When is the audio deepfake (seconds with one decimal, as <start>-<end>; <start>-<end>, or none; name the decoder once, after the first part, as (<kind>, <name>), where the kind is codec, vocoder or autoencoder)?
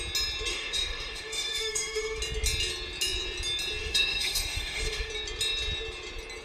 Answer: 0.5-2.2 (autoencoder, DAC-VAE); 3.8-5.1